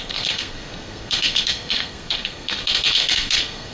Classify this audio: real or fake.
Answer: fake